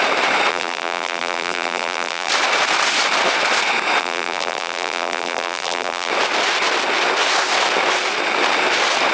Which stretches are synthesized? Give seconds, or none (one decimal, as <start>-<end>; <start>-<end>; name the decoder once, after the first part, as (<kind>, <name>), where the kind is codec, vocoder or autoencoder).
0.5-2.3 (vocoder, BigVGAN v2); 4.0-6.1